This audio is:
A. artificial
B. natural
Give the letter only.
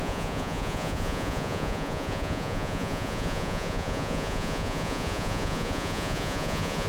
A